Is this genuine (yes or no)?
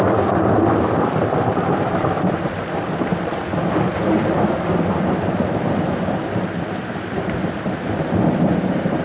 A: no